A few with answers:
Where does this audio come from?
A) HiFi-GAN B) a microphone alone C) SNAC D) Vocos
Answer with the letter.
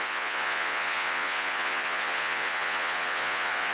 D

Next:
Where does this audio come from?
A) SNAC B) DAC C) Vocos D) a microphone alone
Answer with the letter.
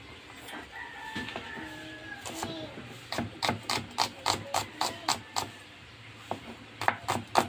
D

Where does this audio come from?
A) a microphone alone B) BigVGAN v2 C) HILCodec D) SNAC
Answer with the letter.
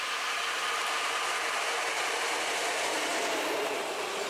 A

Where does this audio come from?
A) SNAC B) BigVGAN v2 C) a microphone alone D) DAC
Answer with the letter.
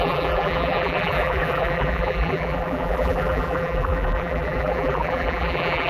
B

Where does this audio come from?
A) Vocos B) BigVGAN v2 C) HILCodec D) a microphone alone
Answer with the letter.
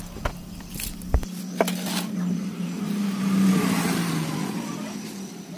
D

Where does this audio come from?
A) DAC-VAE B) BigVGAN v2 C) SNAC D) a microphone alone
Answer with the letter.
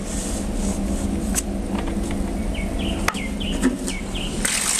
D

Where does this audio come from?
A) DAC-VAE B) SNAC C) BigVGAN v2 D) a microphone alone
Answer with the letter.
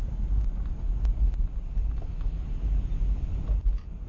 D